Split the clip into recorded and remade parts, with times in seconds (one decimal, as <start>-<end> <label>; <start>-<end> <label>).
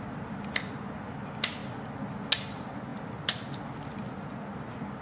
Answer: 0.0-5.0 recorded